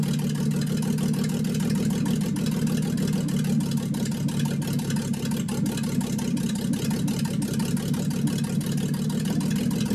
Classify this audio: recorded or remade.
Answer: recorded